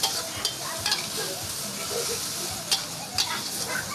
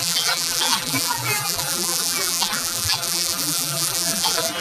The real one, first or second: first